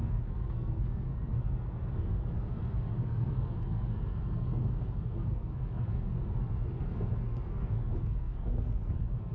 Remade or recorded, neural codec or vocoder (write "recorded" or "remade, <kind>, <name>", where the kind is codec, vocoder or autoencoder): remade, codec, SNAC